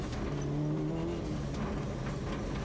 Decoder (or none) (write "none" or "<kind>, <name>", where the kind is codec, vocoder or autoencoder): none